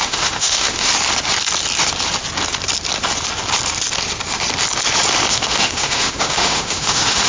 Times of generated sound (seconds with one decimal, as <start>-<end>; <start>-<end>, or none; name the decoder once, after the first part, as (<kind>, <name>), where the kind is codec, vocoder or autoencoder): 0.0-0.9 (autoencoder, DAC-VAE); 5.3-7.3